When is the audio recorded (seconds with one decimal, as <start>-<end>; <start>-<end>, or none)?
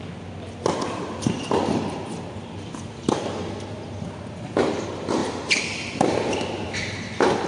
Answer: 0.0-5.2; 5.9-7.5